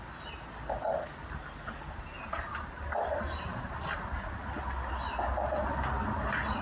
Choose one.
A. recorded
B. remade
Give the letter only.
A